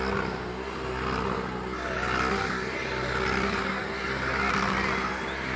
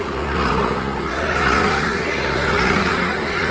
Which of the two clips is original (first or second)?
first